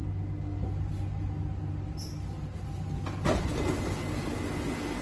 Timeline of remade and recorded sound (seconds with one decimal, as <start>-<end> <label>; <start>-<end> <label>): 0.0-5.0 recorded